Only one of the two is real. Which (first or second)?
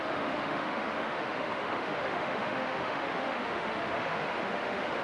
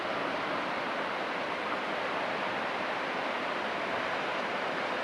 second